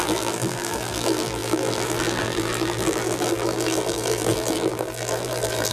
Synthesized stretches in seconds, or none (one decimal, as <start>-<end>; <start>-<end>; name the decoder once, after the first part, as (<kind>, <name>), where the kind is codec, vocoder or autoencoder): 0.0-5.7 (vocoder, BigVGAN v2)